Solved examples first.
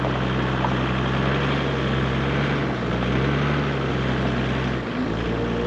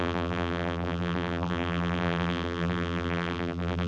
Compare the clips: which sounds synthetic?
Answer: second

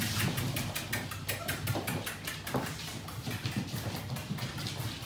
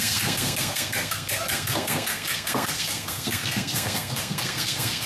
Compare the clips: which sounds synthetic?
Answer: second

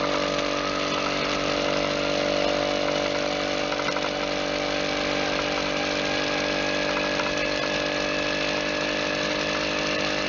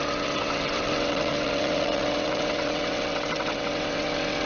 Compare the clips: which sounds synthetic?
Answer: second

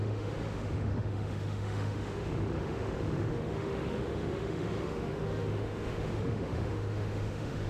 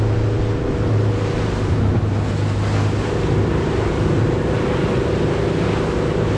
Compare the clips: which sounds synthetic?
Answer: first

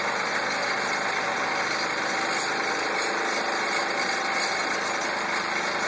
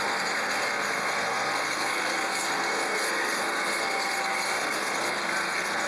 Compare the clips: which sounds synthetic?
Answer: second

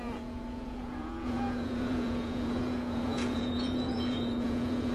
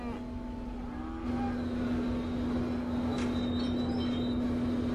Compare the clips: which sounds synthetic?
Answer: first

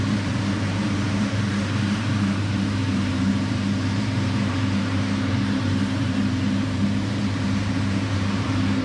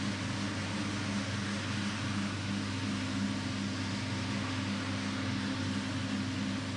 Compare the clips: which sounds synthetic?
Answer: first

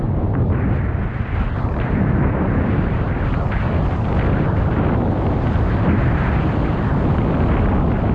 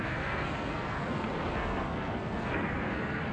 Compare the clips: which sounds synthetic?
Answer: second